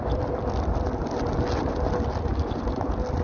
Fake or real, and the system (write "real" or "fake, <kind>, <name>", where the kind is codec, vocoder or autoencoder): real